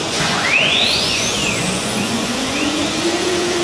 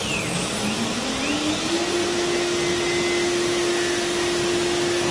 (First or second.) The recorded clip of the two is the second